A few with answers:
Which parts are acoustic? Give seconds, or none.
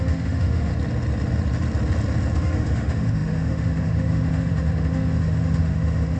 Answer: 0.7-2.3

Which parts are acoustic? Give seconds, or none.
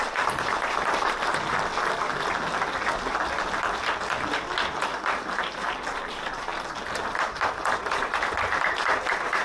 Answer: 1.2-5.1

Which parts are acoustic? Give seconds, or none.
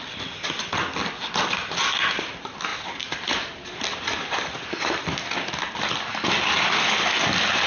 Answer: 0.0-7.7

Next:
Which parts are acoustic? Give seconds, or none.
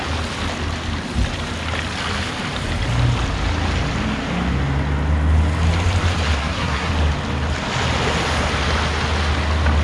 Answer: 0.0-6.4; 6.9-9.8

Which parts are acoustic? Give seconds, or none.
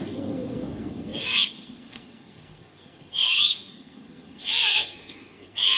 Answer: none